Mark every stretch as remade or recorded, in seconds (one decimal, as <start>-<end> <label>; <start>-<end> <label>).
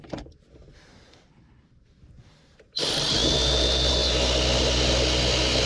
0.0-5.7 recorded